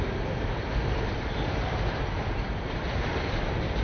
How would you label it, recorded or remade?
remade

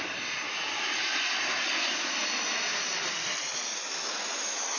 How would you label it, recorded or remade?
recorded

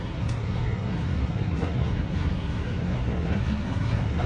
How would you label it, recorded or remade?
remade